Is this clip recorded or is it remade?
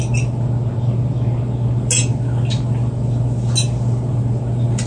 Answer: recorded